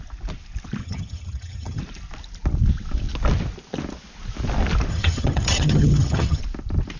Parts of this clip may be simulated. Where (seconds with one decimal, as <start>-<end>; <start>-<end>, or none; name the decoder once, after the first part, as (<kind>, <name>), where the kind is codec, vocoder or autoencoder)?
0.8-1.8 (vocoder, HiFi-GAN); 4.9-6.4